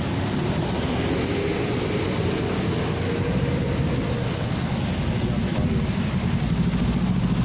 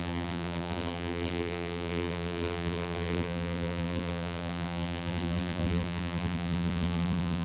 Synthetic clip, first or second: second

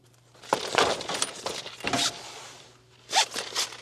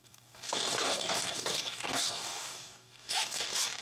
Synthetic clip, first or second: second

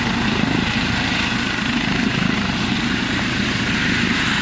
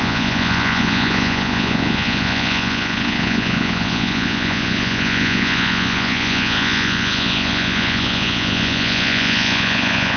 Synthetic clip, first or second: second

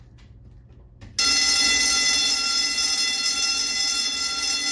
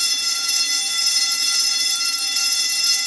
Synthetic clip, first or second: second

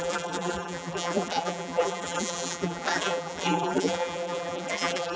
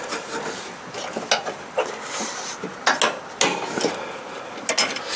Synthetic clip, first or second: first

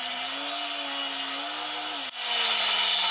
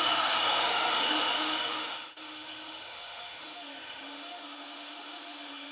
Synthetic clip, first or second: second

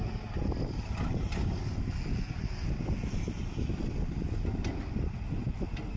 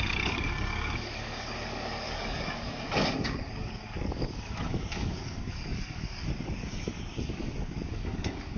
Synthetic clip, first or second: second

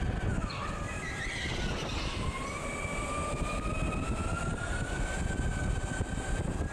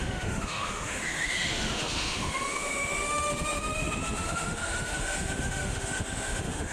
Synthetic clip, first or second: second